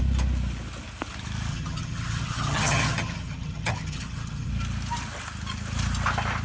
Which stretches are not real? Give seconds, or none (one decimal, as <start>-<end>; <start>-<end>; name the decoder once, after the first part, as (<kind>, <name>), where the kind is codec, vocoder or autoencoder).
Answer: 1.5-4.5 (vocoder, HiFi-GAN)